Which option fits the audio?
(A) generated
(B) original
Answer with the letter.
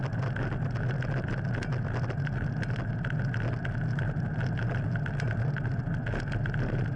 B